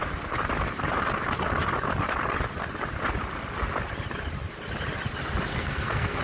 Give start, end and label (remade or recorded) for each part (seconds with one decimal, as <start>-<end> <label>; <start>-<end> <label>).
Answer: 0.0-5.5 recorded; 5.5-6.2 remade